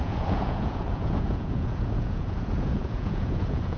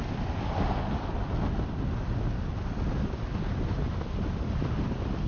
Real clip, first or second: second